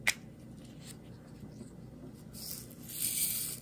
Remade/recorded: recorded